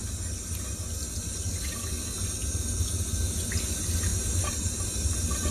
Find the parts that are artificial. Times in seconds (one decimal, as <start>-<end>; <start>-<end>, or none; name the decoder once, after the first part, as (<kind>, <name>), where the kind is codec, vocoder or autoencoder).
none